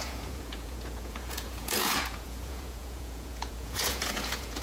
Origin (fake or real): fake